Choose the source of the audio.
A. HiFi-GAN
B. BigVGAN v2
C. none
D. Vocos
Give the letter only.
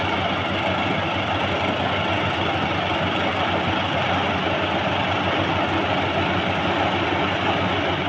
C